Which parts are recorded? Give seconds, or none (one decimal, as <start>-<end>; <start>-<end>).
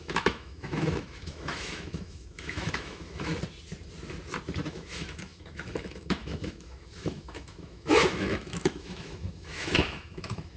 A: 3.3-4.7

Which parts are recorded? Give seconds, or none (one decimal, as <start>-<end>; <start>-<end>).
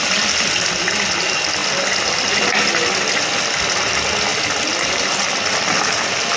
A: 0.0-4.3; 5.5-6.4